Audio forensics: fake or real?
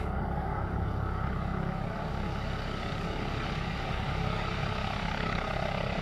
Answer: fake